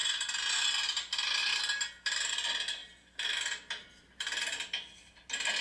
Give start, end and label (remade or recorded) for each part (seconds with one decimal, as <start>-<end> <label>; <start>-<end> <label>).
0.0-5.6 recorded